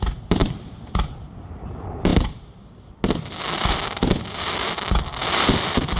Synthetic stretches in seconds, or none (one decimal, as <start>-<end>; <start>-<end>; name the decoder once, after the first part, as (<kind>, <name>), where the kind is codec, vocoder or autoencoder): none

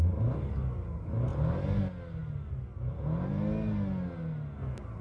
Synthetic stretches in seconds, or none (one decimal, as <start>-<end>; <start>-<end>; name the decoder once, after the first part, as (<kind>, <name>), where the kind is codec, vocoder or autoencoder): none

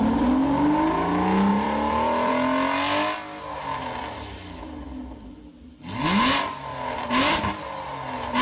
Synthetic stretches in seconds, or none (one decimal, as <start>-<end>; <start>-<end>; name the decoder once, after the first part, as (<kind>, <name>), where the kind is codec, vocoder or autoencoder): 1.5-2.3 (vocoder, BigVGAN v2); 6.7-7.4

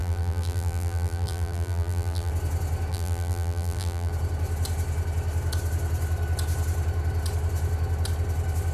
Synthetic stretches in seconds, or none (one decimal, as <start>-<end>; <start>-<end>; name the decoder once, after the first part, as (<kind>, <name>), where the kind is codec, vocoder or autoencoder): 0.0-2.3 (vocoder, BigVGAN v2); 2.9-4.1

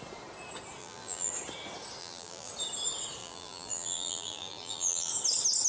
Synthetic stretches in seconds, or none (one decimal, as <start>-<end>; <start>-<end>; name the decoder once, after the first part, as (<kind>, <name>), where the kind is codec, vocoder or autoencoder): 0.8-1.3 (vocoder, BigVGAN v2); 2.0-2.5; 3.2-5.1

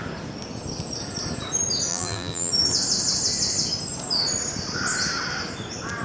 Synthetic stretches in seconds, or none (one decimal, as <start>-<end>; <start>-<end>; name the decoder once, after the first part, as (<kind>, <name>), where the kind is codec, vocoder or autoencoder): 1.9-2.5 (vocoder, BigVGAN v2)

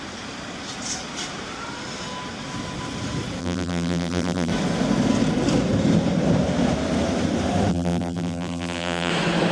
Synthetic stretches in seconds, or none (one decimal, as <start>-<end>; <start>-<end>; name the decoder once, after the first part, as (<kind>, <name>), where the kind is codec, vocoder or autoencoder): 3.4-4.5 (vocoder, BigVGAN v2); 7.7-9.1

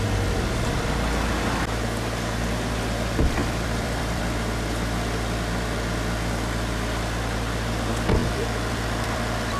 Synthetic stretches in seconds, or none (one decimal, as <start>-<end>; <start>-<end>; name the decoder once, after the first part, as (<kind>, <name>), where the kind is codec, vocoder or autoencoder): 3.4-4.2 (vocoder, BigVGAN v2); 8.2-9.6